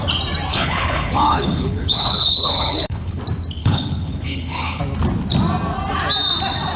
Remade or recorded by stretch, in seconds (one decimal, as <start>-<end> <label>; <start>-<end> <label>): 0.0-0.5 recorded; 0.5-3.2 remade; 3.2-3.6 recorded; 3.6-4.8 remade; 4.8-6.8 recorded